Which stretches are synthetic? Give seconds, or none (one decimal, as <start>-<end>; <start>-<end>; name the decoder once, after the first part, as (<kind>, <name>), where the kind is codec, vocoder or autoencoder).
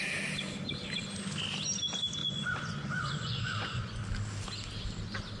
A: 2.2-4.0 (vocoder, Vocos)